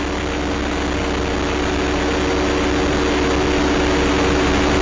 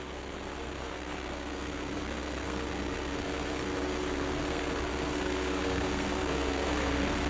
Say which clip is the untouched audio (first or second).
first